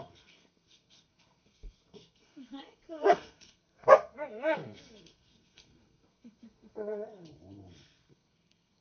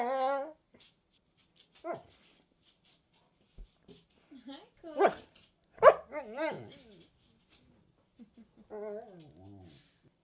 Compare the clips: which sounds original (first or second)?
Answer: second